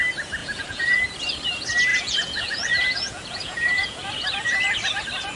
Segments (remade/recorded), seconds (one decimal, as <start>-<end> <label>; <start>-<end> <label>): 0.0-0.4 recorded; 0.4-1.1 remade; 1.1-1.9 recorded; 1.9-4.0 remade; 4.0-5.4 recorded